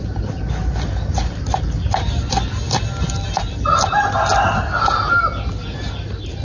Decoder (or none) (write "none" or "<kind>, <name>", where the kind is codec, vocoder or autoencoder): none